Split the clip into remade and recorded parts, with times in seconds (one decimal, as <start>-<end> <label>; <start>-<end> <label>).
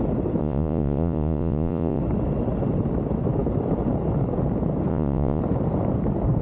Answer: 0.0-0.4 recorded; 0.4-2.0 remade; 2.0-4.9 recorded; 4.9-5.4 remade; 5.4-6.4 recorded